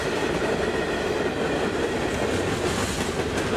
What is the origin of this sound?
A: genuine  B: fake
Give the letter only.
A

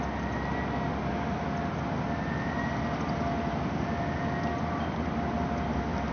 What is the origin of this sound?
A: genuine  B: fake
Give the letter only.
A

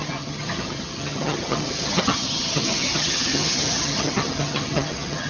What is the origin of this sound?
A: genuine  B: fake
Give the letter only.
B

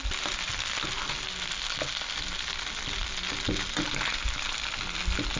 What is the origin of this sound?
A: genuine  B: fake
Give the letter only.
A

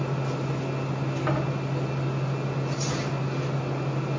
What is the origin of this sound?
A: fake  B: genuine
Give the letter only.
B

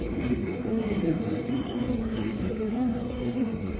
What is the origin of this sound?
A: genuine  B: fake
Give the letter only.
B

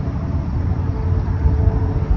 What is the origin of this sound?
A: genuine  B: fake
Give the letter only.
A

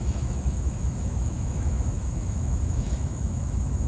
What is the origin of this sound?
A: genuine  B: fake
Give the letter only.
B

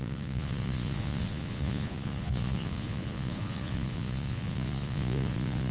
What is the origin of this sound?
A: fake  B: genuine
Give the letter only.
A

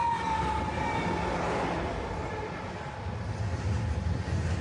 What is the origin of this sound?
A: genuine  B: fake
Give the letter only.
A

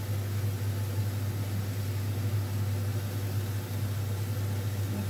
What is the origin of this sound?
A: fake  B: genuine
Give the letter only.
B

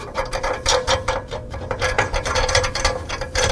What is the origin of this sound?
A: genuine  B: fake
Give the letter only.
B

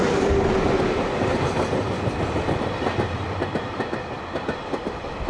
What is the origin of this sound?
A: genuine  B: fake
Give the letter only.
A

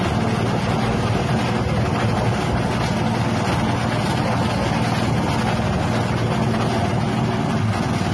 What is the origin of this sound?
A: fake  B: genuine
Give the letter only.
B